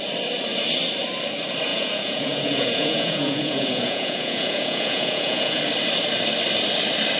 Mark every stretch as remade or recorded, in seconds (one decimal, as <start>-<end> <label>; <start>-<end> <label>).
0.0-1.7 recorded; 1.7-5.6 remade; 5.6-7.2 recorded